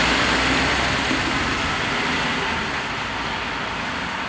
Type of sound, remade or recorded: recorded